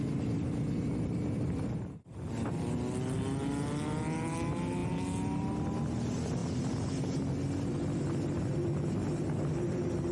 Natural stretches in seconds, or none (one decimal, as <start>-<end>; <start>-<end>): 0.0-0.9; 1.8-10.1